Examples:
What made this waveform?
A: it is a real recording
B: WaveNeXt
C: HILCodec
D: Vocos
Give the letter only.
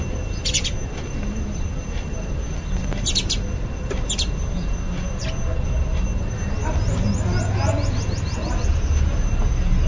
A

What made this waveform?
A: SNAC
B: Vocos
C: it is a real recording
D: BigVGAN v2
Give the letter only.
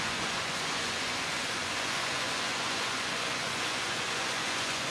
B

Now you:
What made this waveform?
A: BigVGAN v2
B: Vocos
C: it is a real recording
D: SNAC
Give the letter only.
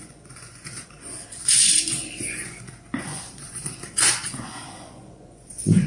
B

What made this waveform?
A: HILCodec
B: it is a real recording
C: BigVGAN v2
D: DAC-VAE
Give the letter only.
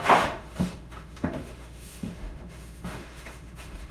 D